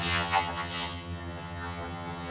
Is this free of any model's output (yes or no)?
no